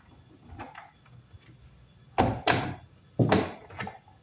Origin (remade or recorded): recorded